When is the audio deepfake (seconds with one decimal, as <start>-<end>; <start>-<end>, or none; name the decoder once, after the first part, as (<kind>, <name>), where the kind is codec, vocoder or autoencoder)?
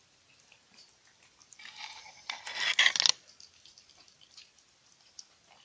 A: none